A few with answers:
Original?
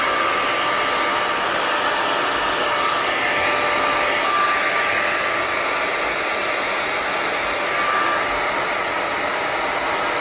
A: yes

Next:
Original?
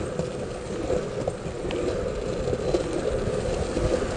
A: yes